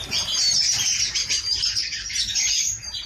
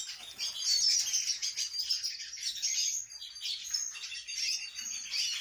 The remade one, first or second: first